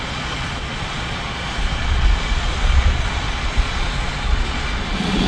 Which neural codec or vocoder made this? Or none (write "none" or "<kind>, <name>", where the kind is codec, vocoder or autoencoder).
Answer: vocoder, Vocos